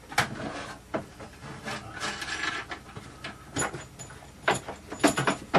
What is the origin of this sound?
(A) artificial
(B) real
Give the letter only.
B